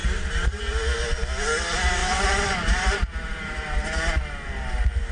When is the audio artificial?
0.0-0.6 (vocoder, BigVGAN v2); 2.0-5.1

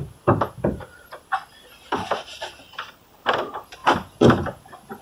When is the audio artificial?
2.2-2.9 (vocoder, BigVGAN v2); 3.8-5.0

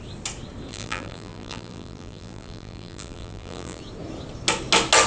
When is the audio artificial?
0.7-3.8 (vocoder, BigVGAN v2)